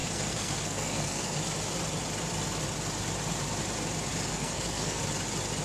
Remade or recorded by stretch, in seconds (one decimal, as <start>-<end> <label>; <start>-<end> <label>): 0.0-1.4 remade; 1.4-4.3 recorded; 4.3-5.0 remade; 5.0-5.6 recorded